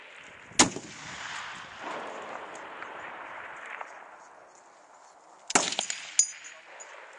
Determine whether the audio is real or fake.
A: real